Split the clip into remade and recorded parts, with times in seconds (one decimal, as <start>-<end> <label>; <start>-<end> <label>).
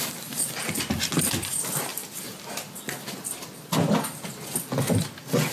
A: 0.0-5.5 recorded